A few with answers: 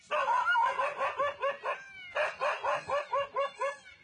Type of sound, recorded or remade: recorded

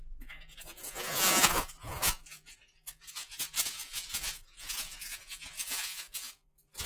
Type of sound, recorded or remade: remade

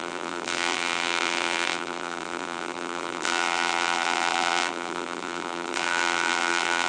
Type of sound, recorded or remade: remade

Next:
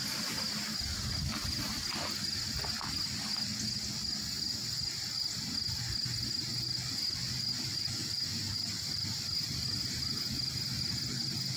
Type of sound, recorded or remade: recorded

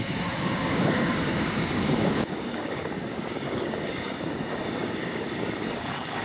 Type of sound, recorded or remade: remade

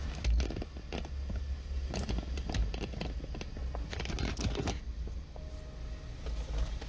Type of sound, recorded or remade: recorded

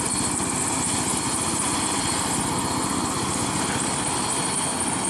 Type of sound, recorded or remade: recorded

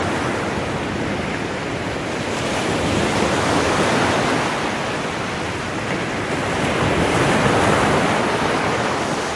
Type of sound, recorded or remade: recorded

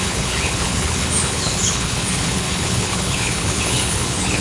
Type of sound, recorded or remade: remade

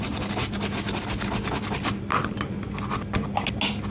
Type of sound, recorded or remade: recorded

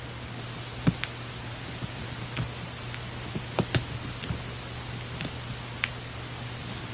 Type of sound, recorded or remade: recorded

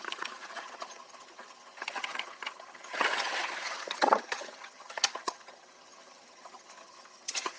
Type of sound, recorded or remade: remade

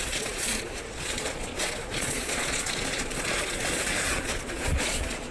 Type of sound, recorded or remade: remade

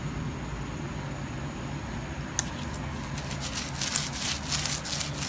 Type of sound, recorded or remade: recorded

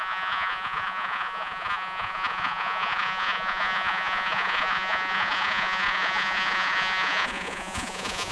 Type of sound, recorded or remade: remade